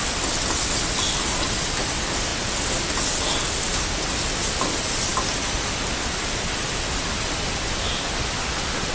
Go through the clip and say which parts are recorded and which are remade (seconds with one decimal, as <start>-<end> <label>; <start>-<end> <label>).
0.0-8.9 recorded